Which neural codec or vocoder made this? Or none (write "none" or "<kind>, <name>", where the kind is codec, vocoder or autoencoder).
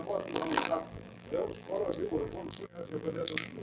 vocoder, BigVGAN v2